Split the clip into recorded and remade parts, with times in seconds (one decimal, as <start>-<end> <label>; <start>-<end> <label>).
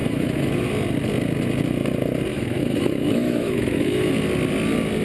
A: 0.0-0.7 remade; 0.7-2.3 recorded; 2.3-4.1 remade; 4.1-5.0 recorded